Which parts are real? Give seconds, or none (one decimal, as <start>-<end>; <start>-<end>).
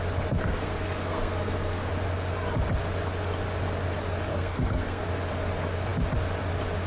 0.0-0.4; 1.9-4.3; 5.0-6.9